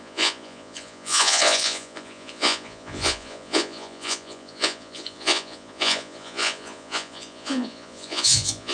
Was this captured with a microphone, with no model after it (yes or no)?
no